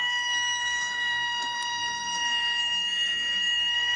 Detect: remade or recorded remade